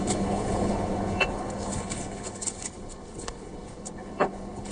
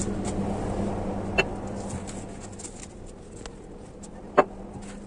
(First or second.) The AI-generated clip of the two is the first